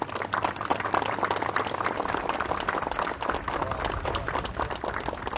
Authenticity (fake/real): real